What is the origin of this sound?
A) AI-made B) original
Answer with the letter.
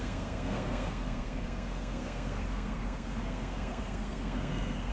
A